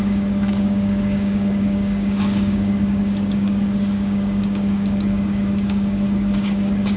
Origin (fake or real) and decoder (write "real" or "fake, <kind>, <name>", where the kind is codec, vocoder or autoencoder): fake, codec, DAC